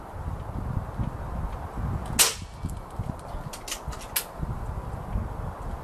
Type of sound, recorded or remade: recorded